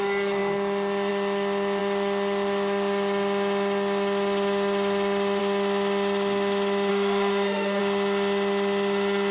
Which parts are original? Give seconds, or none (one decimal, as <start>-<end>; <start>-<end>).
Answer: 0.0-6.9; 7.8-9.3